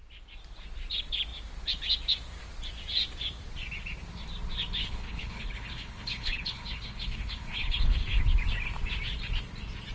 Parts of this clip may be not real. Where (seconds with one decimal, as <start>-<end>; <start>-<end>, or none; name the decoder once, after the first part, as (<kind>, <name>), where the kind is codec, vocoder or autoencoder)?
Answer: 4.8-8.2 (codec, HILCodec)